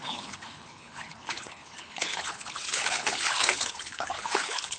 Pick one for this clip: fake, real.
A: fake